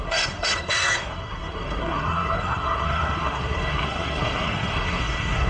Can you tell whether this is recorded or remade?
remade